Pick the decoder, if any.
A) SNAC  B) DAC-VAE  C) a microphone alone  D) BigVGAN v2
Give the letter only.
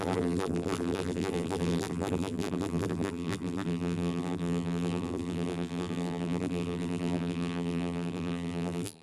D